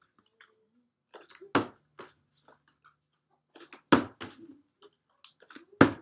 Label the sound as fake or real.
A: real